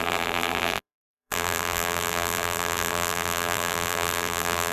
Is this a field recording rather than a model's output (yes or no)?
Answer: no